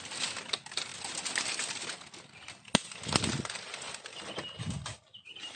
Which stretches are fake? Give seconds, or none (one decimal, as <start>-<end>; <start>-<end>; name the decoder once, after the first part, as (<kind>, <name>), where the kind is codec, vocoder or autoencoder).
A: none